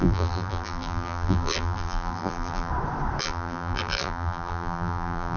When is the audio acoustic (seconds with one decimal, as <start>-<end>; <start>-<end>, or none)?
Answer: 2.7-3.2